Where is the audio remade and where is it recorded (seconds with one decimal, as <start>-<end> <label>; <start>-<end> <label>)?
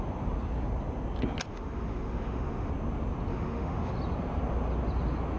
0.0-1.5 recorded; 1.5-2.7 remade; 2.7-3.3 recorded; 3.3-3.9 remade; 3.9-5.4 recorded